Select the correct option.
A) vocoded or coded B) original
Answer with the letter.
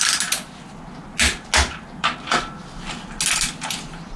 B